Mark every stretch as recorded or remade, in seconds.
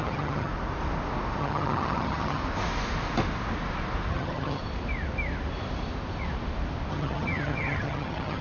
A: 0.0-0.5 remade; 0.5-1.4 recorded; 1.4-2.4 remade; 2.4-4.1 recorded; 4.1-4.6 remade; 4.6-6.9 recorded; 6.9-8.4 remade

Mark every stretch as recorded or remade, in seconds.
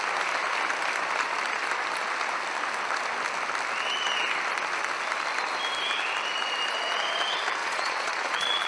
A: 0.0-7.6 recorded; 7.6-8.7 remade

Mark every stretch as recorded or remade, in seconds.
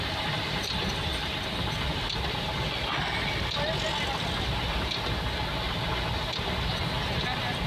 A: 0.0-7.7 recorded